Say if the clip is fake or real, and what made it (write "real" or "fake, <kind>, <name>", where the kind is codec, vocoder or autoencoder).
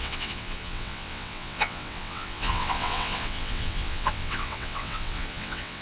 fake, vocoder, WaveNeXt